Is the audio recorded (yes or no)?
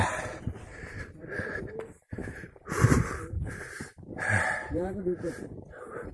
no